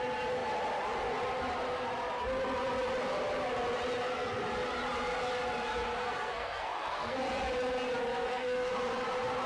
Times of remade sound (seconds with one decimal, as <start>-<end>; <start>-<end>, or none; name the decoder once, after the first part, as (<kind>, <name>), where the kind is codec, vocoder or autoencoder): 6.0-7.2 (codec, SNAC); 8.2-8.7